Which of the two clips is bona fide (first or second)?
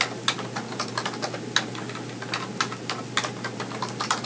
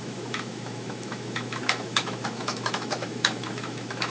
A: first